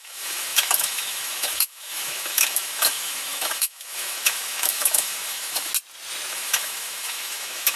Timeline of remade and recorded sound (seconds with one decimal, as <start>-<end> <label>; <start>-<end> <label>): 0.0-5.7 remade; 5.7-6.3 recorded; 6.3-7.8 remade